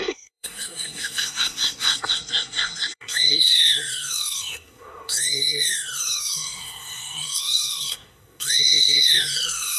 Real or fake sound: fake